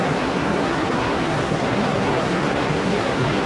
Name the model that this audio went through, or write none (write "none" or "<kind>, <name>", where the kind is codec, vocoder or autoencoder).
codec, SNAC